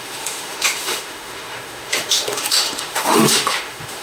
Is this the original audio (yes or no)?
no